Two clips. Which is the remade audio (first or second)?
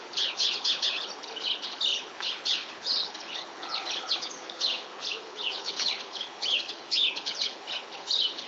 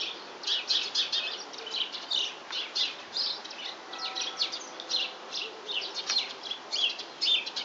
first